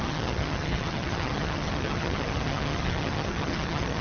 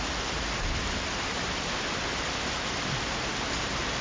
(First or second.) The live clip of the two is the second